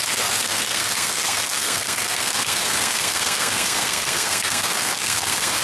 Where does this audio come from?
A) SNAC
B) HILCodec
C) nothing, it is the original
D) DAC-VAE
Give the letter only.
A